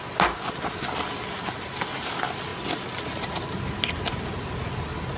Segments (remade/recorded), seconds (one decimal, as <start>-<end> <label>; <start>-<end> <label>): 0.0-5.2 recorded